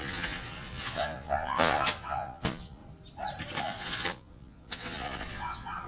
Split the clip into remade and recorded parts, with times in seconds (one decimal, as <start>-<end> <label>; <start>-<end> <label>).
0.0-2.8 remade; 2.8-3.6 recorded; 3.6-5.9 remade